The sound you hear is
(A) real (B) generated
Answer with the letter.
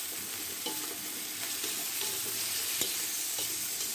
B